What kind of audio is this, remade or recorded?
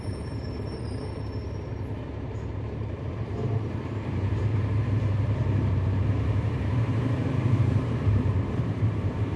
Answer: remade